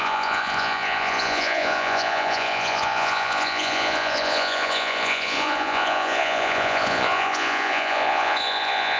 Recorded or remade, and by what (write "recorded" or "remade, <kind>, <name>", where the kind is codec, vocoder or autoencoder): remade, vocoder, Vocos